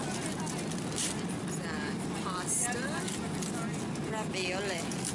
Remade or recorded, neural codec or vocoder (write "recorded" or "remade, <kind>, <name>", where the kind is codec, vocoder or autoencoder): recorded